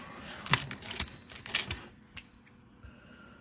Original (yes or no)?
yes